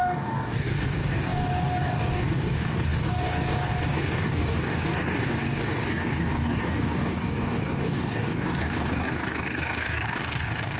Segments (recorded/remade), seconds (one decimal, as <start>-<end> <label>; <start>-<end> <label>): 0.0-10.8 remade